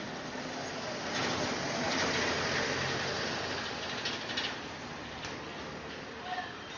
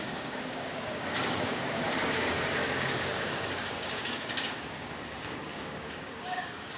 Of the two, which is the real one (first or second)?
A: first